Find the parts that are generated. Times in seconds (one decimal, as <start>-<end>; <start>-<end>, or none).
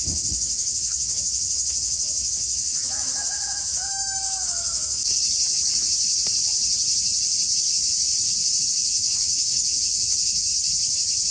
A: 0.0-5.0; 8.6-10.5